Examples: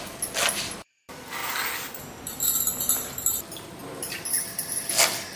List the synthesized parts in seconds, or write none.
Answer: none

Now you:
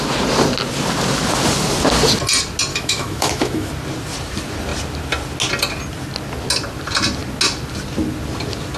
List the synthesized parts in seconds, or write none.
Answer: 2.7-3.7 (autoencoder, DAC-VAE)

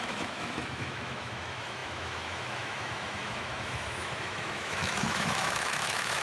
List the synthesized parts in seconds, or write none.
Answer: 0.0-6.2 (autoencoder, DAC-VAE)

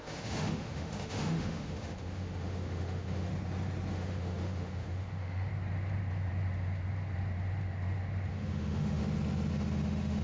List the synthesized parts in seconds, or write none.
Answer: 0.0-3.3 (autoencoder, DAC-VAE); 3.9-5.5; 8.3-9.0; 9.5-10.2

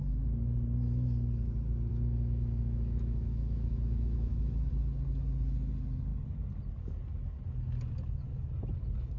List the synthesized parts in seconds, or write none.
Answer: 1.9-4.7 (autoencoder, DAC-VAE)